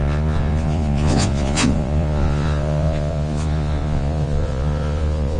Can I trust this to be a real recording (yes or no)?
no